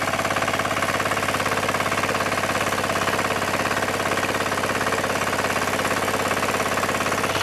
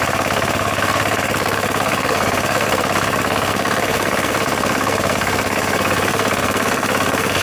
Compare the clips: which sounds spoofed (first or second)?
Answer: second